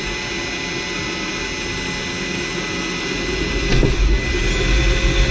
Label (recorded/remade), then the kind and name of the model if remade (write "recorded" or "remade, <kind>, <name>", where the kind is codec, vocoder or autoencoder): recorded